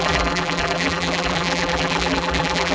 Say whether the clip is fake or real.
fake